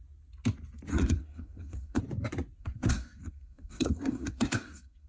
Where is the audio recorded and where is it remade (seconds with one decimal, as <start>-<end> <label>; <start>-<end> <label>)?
0.0-0.9 recorded; 0.9-2.0 remade; 2.0-2.6 recorded; 2.6-5.1 remade